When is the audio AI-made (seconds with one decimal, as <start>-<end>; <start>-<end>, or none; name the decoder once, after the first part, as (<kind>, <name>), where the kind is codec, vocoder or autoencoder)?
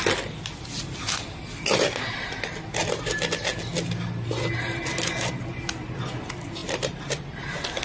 none